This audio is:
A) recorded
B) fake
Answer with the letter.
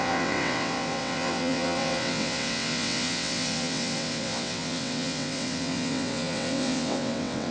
B